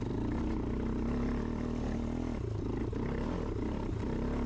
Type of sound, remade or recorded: recorded